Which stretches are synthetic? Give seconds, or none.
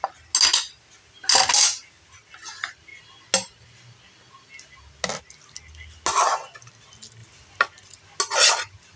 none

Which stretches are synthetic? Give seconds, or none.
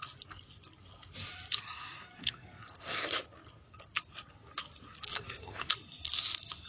2.2-3.1 (codec, SNAC); 5.1-5.7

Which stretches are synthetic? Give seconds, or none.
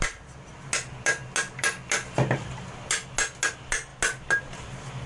none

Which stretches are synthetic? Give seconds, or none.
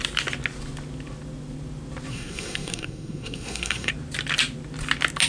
2.1-3.9 (codec, SNAC)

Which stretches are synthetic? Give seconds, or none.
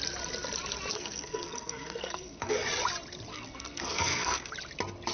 0.9-2.6 (codec, SNAC); 3.3-4.5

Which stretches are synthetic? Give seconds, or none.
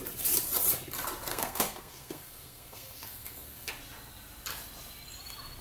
1.3-3.7 (codec, SNAC)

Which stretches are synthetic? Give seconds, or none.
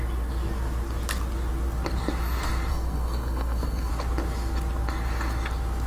2.7-3.9 (codec, SNAC)